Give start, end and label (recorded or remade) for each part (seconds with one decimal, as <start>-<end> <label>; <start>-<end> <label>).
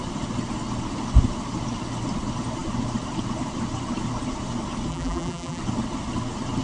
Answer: 0.0-4.9 recorded; 4.9-5.6 remade; 5.6-6.6 recorded